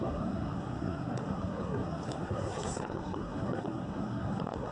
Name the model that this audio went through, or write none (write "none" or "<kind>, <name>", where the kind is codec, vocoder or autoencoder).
codec, SNAC